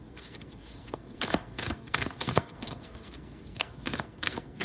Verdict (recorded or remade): remade